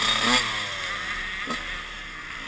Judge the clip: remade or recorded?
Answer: recorded